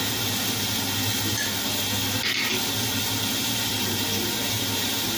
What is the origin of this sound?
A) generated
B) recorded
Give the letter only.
B